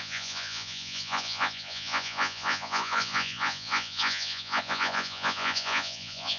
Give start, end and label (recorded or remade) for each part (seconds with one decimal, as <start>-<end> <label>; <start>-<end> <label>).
0.0-6.4 remade